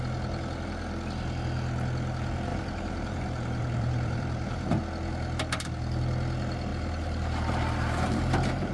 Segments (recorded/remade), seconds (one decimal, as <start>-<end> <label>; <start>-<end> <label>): 0.0-2.5 recorded; 2.5-4.8 remade; 4.8-6.7 recorded; 6.7-8.7 remade